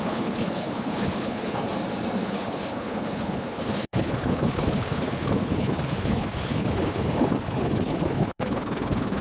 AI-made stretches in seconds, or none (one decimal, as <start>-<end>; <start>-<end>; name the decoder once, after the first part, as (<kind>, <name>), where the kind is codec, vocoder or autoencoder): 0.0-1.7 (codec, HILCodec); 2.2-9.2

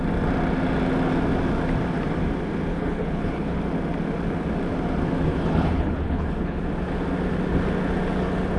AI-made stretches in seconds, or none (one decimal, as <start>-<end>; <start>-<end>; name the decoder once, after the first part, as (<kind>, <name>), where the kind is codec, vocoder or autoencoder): 2.7-3.6 (codec, HILCodec); 5.3-6.6

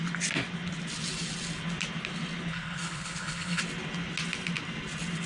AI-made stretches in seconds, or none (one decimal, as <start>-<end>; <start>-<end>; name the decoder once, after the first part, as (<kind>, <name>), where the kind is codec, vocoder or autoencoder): 2.5-3.6 (codec, HILCodec)

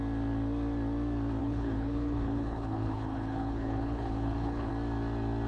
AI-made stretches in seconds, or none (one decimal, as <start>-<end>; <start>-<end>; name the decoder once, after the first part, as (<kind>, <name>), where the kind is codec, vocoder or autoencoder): 1.4-4.7 (codec, HILCodec)

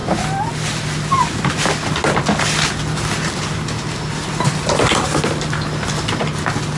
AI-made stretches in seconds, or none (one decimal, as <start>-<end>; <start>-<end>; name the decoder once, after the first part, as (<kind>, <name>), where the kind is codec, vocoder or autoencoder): none

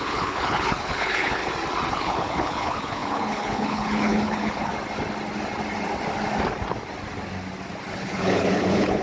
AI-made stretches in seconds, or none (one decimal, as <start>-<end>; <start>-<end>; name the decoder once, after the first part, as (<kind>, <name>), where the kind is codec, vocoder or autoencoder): 0.0-1.4 (codec, HILCodec); 1.9-4.7; 7.9-9.0